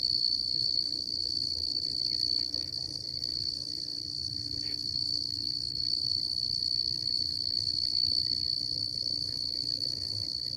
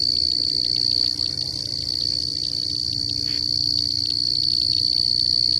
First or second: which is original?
second